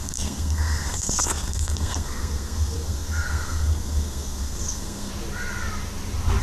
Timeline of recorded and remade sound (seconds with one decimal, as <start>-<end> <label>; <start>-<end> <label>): 0.0-5.1 remade; 5.1-6.4 recorded